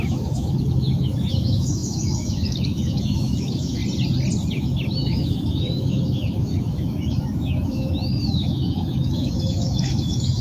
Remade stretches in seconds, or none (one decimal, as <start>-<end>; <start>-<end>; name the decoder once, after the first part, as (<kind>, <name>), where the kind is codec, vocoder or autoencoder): 0.0-3.8 (autoencoder, DAC-VAE); 4.5-10.4